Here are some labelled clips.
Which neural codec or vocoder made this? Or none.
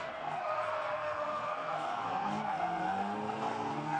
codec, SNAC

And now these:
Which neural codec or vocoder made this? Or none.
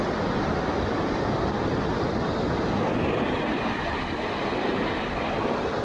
none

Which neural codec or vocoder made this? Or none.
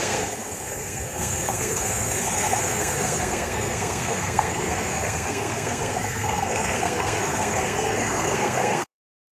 codec, SNAC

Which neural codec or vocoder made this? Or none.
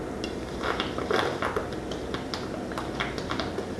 none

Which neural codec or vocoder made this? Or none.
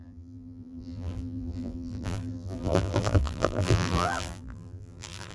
vocoder, BigVGAN v2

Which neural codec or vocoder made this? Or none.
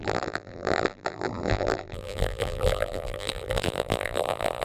vocoder, BigVGAN v2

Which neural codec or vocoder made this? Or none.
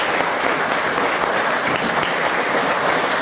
none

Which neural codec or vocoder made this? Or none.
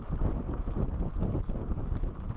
none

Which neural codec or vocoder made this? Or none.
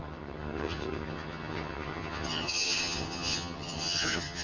vocoder, HiFi-GAN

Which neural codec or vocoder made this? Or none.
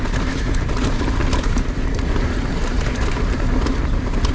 none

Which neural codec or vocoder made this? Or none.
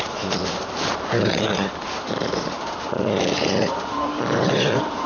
vocoder, BigVGAN v2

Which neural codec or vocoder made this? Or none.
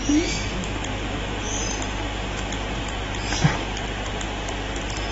none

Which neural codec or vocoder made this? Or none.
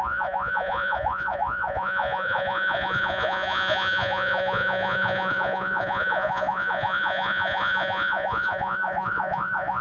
vocoder, Vocos